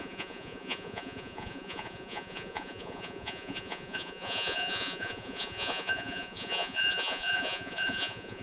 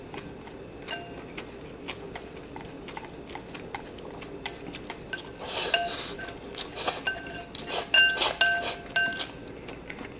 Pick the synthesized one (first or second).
first